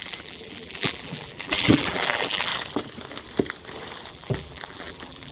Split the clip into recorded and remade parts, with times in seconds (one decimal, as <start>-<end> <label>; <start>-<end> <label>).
0.0-2.5 remade; 2.5-4.1 recorded; 4.1-5.3 remade